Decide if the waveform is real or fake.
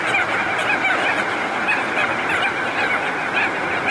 real